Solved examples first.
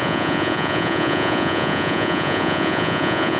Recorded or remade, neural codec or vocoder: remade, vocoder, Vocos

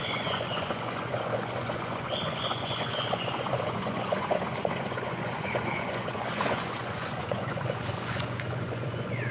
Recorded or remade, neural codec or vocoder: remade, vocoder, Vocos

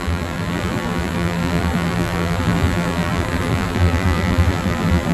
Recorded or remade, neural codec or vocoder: remade, vocoder, BigVGAN v2